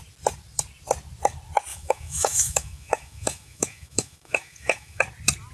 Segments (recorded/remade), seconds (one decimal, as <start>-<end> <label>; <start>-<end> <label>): 0.0-1.7 recorded; 1.7-5.0 remade; 5.0-5.5 recorded